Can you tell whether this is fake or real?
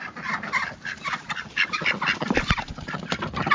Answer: real